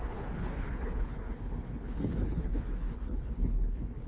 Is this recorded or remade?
remade